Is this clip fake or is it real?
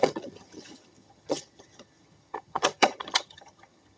fake